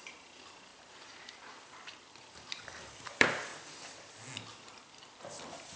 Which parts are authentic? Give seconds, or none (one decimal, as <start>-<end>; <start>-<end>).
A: 3.5-5.8